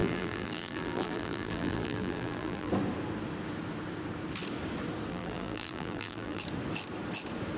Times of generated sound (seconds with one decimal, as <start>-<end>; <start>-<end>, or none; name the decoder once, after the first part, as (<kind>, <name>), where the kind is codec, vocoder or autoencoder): 0.0-2.7 (vocoder, BigVGAN v2); 5.1-6.4